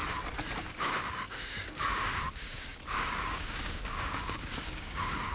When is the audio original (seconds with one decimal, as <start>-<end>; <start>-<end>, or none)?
0.0-0.6